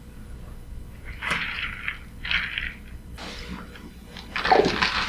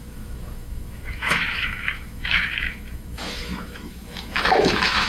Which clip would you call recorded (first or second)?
first